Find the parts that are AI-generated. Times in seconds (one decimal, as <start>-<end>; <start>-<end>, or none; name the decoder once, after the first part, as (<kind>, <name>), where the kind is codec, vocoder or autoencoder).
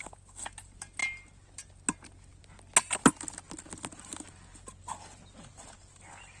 none